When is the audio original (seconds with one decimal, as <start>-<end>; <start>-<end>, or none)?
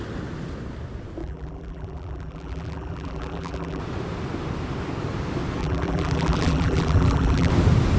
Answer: 0.0-1.2; 3.8-5.6; 7.5-8.0